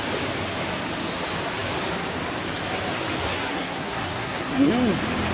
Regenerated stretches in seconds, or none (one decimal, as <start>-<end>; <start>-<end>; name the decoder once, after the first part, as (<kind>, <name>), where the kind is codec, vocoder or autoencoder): 3.2-4.7 (codec, SNAC)